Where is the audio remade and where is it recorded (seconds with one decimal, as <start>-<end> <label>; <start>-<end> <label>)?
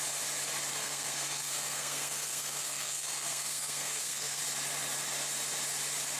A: 0.0-0.7 recorded; 0.7-4.4 remade; 4.4-6.2 recorded